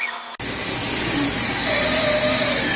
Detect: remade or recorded recorded